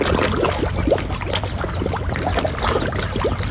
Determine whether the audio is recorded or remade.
recorded